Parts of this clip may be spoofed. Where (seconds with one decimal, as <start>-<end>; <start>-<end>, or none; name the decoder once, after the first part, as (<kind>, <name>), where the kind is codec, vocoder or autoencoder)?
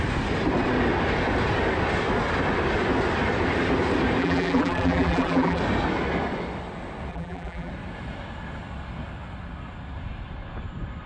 4.2-5.6 (vocoder, BigVGAN v2); 7.1-7.7